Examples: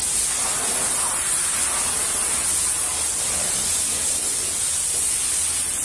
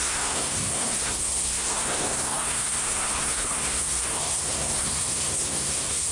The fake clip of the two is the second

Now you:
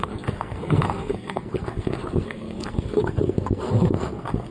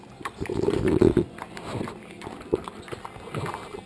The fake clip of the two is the first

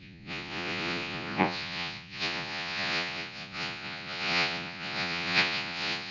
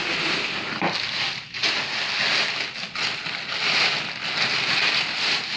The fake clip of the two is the first